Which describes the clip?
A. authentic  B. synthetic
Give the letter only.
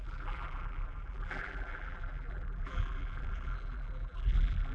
B